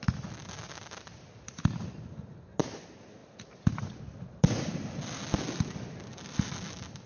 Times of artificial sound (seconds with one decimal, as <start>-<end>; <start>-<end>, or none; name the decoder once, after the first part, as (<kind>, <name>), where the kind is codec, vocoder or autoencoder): none